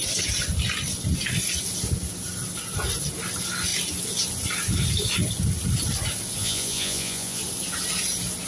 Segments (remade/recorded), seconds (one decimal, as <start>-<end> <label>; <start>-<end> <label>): 0.0-6.4 recorded; 6.4-7.4 remade; 7.4-8.5 recorded